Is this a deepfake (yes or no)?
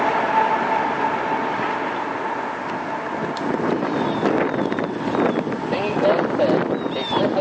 no